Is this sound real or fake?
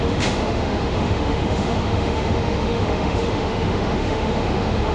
fake